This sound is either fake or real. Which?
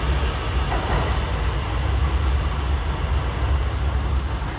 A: real